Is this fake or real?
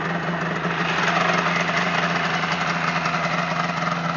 real